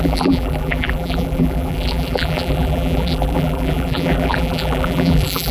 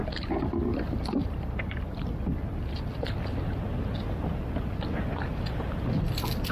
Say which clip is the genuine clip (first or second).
second